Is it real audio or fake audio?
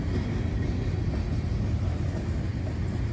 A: real